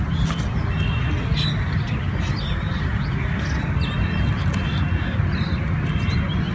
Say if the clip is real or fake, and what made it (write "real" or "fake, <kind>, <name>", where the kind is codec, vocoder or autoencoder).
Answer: real